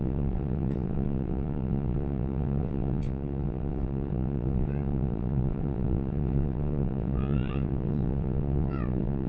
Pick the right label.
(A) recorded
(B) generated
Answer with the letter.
B